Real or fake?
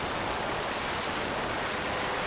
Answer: real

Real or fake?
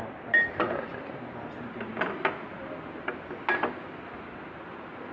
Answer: real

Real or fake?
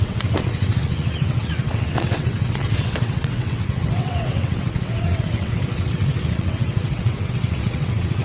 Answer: fake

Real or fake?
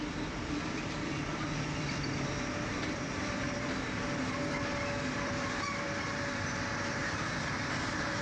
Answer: fake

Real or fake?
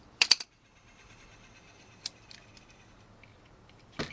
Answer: fake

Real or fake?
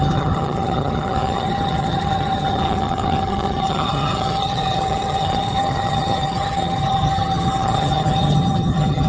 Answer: fake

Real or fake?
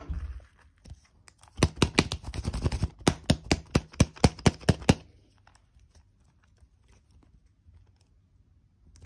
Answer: real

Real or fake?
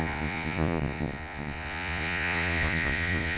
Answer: fake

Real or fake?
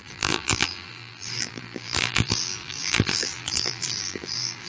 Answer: fake